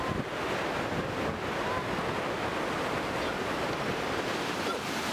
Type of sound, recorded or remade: recorded